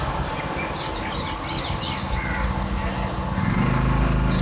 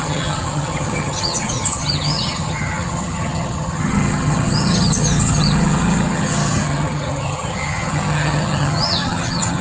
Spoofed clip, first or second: second